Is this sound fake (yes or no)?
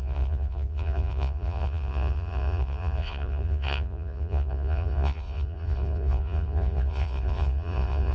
yes